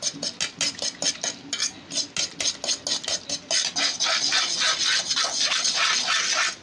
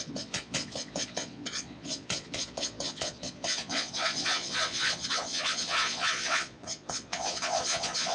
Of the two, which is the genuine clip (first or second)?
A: first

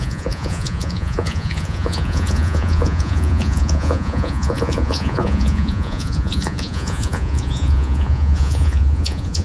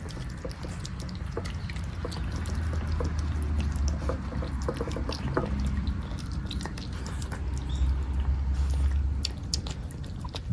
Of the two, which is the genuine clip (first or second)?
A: second